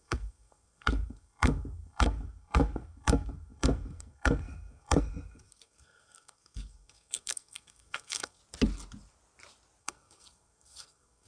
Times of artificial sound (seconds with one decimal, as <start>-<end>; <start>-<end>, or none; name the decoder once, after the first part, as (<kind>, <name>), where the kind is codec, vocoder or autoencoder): 0.0-8.4 (codec, SNAC); 9.8-11.3